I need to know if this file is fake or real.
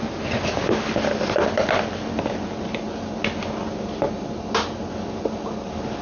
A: real